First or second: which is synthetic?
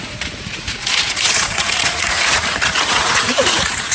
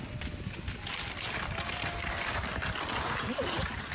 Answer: first